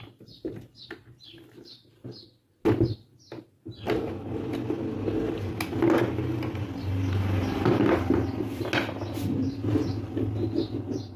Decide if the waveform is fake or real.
real